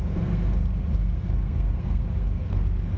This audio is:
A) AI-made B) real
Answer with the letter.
A